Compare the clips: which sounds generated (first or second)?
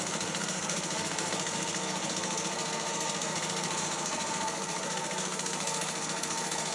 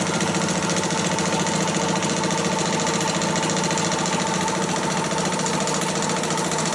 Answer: first